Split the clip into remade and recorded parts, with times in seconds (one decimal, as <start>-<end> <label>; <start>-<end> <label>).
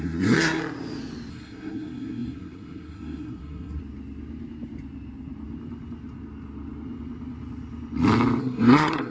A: 0.0-0.6 remade; 0.6-1.3 recorded; 1.3-3.8 remade; 3.8-8.4 recorded; 8.4-9.1 remade